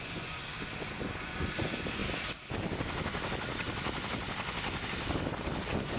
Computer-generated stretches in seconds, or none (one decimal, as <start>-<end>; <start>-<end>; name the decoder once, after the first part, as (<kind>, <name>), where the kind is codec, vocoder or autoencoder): 0.0-0.5 (vocoder, Vocos); 1.2-2.0; 5.6-6.0